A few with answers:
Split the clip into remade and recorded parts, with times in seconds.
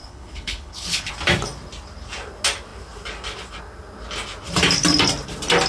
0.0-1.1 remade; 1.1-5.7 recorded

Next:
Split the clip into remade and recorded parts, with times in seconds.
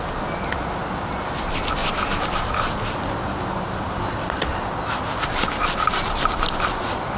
0.0-7.2 recorded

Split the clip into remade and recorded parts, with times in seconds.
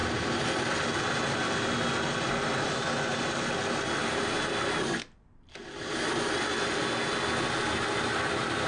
0.0-8.7 recorded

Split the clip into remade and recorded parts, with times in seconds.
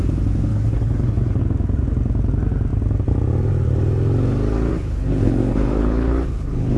0.0-0.5 recorded; 0.5-1.4 remade; 1.4-4.7 recorded; 4.7-6.8 remade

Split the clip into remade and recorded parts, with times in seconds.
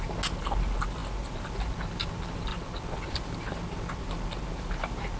0.0-5.2 recorded